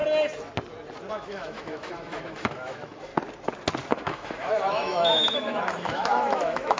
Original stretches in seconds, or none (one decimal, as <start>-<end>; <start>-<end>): 0.0-1.1; 3.1-3.9